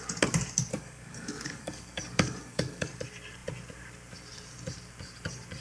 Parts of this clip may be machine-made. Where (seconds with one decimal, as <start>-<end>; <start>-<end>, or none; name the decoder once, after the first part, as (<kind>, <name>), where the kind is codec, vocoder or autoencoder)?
0.7-3.0 (codec, DAC)